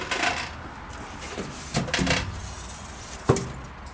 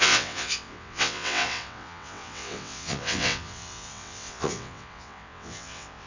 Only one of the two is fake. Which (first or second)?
second